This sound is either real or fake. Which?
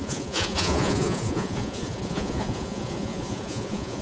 fake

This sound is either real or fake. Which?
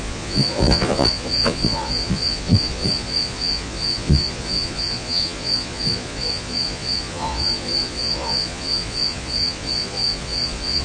fake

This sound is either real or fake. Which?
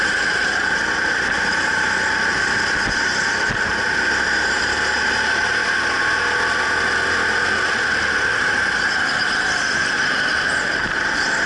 real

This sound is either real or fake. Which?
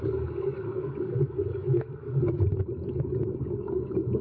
fake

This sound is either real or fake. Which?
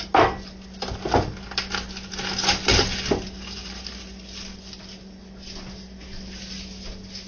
real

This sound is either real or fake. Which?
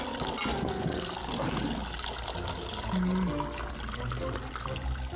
real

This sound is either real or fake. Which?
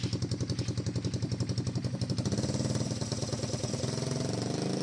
real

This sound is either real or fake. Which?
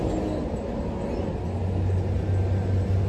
real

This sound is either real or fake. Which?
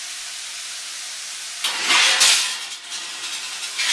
real